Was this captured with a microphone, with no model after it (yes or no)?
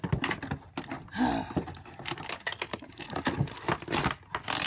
yes